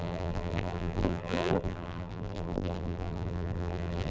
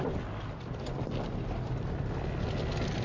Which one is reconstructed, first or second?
first